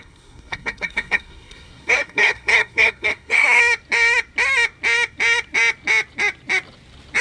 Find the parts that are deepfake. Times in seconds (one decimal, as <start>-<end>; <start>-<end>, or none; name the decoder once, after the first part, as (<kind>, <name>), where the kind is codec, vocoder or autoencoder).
0.0-3.6 (codec, SNAC)